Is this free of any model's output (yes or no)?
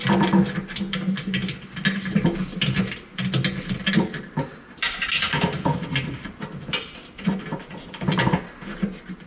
yes